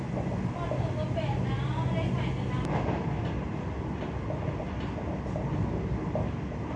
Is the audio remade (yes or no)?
no